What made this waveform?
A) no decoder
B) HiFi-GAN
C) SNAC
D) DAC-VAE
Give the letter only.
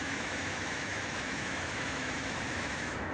D